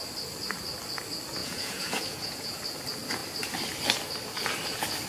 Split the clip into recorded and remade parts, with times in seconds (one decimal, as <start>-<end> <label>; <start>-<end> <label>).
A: 0.0-1.4 recorded; 1.4-2.6 remade; 2.6-5.1 recorded